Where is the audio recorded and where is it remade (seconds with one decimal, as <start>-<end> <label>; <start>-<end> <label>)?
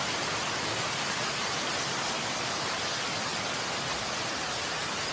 0.0-5.1 recorded